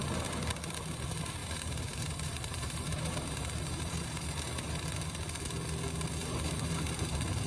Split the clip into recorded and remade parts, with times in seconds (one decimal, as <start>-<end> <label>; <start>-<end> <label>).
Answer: 0.0-1.4 recorded; 1.4-4.8 remade; 4.8-6.2 recorded; 6.2-7.1 remade; 7.1-7.5 recorded